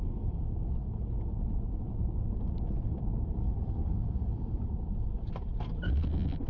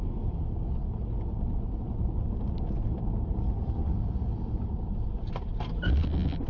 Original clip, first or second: second